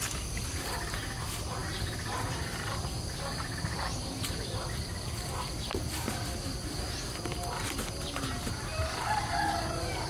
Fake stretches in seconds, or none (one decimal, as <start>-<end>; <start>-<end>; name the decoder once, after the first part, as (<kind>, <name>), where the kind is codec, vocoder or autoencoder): 1.6-6.8 (vocoder, BigVGAN v2); 8.7-9.6